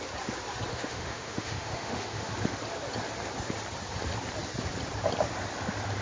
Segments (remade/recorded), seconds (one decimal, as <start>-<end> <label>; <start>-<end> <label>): 0.0-0.7 recorded; 0.7-2.3 remade; 2.3-6.0 recorded